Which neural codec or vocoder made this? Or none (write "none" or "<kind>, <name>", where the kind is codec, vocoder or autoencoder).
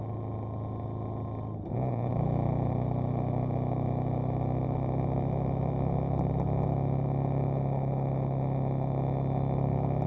none